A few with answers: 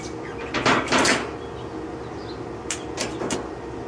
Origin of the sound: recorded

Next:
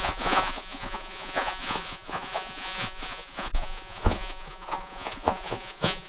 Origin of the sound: remade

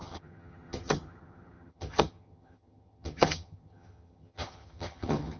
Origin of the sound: remade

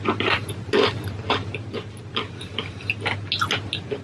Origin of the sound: recorded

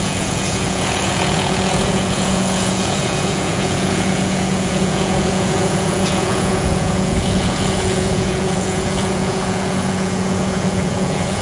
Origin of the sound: remade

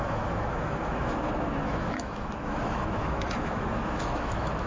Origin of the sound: remade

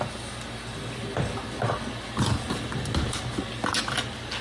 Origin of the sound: recorded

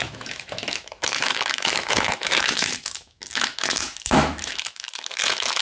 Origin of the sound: remade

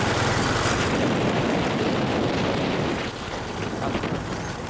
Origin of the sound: recorded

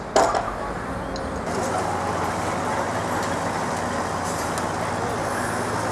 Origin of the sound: recorded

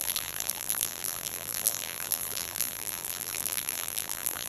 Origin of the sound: remade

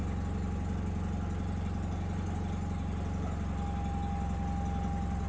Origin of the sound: recorded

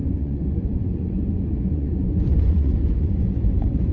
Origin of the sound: remade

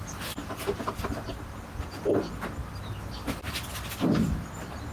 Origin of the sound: recorded